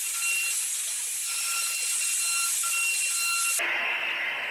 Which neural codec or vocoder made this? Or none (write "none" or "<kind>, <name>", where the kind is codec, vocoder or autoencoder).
none